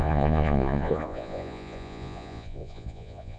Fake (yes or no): yes